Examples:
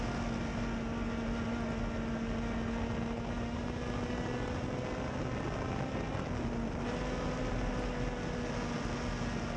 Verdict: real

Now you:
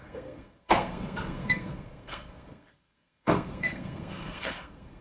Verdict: fake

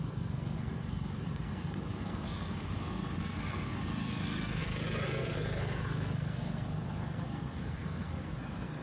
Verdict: fake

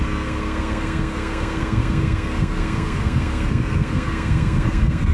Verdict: fake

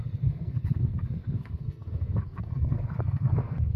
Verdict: fake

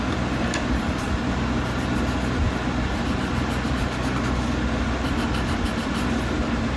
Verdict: real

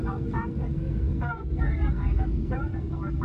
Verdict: fake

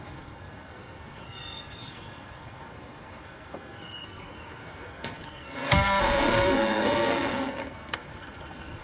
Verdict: fake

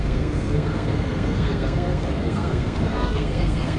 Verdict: fake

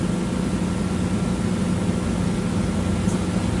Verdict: real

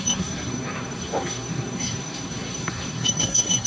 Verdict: fake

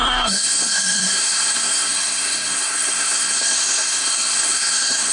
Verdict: fake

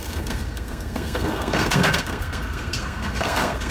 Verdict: fake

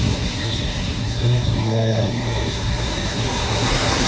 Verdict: fake